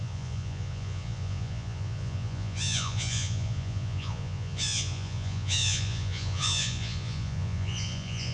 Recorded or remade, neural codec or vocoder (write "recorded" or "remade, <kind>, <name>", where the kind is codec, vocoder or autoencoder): remade, vocoder, Vocos